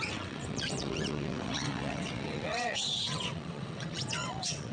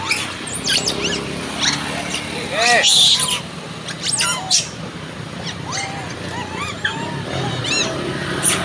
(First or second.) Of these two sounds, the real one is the second